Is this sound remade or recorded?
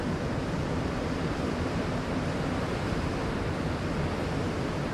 remade